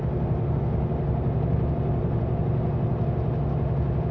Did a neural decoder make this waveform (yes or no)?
no